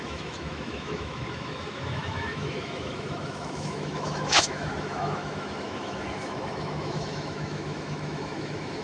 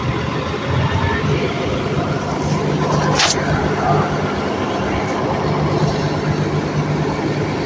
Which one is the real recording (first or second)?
second